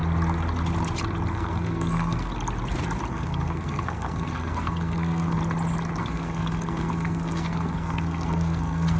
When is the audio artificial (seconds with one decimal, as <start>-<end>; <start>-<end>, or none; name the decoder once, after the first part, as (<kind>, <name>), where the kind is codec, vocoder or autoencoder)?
1.3-2.3 (codec, SNAC); 3.1-5.4; 6.0-9.0